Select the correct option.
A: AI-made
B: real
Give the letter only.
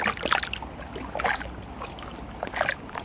B